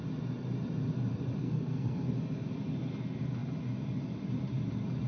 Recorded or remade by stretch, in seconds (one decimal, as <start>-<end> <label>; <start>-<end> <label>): 0.0-1.4 recorded; 1.4-2.1 remade; 2.1-5.1 recorded